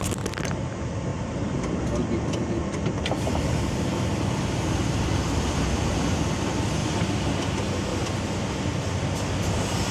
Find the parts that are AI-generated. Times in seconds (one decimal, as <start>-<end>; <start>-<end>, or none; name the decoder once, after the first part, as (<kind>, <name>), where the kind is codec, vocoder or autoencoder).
1.1-1.8 (vocoder, BigVGAN v2); 7.9-8.4